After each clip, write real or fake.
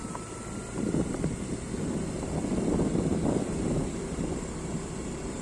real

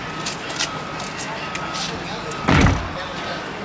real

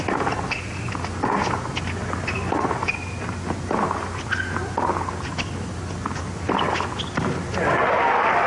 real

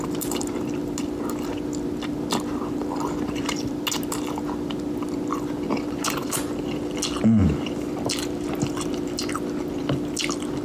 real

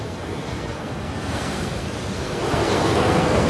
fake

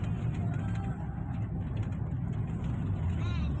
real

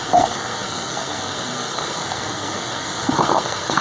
fake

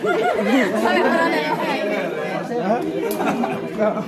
real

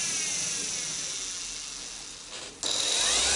real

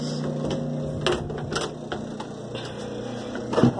real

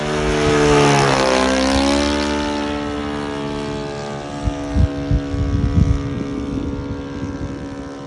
real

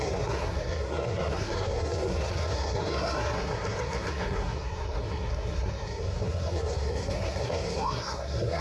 fake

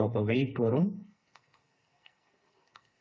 fake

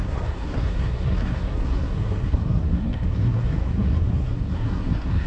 fake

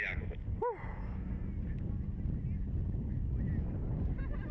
real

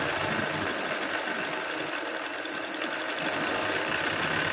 real